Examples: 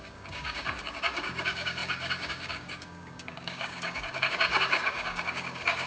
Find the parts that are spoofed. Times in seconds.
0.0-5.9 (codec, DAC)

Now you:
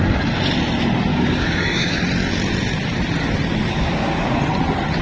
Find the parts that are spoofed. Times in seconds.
1.1-2.0 (codec, DAC); 3.6-4.4

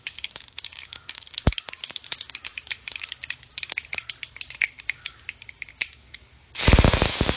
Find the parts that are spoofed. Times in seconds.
0.0-6.3 (codec, DAC); 6.9-7.4

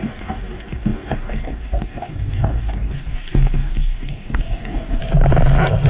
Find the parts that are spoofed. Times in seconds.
0.0-5.0 (codec, DAC)

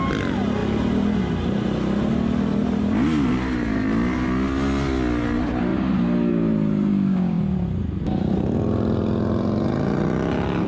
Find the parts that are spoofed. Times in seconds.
6.9-7.4 (codec, DAC)

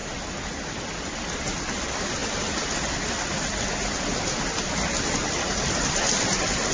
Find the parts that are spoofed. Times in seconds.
none

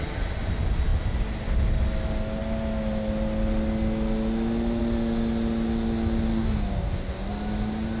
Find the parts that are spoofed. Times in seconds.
6.3-7.3 (codec, DAC)

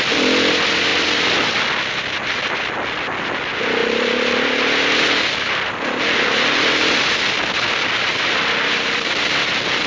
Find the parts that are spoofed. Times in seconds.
none